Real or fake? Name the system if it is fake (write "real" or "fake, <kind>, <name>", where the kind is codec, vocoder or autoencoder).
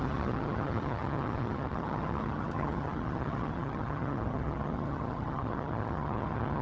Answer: fake, vocoder, HiFi-GAN